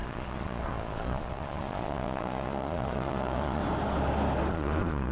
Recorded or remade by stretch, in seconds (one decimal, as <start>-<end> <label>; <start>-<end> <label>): 0.0-3.6 remade; 3.6-4.5 recorded; 4.5-5.1 remade